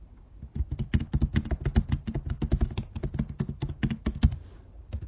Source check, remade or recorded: recorded